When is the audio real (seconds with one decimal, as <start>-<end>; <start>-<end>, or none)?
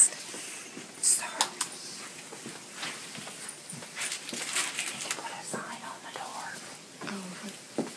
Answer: 0.0-6.3; 7.1-8.0